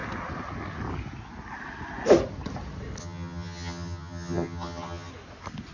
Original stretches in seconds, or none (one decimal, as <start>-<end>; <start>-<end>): 0.0-3.0; 5.1-5.7